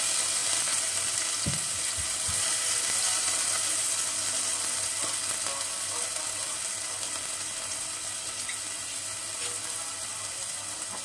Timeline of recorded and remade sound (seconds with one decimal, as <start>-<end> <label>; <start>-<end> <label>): 0.0-11.0 recorded